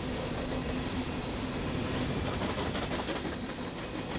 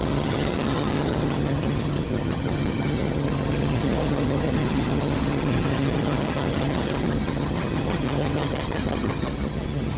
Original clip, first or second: first